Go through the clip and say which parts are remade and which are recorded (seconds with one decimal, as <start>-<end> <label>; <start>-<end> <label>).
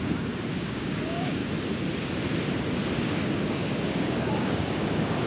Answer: 0.0-1.4 remade; 1.4-3.0 recorded; 3.0-5.3 remade